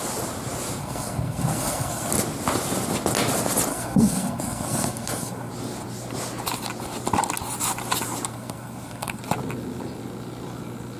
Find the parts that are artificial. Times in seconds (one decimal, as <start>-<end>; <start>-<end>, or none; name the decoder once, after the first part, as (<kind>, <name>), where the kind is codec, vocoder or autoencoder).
0.8-2.1 (codec, SNAC); 3.7-5.5; 8.3-9.2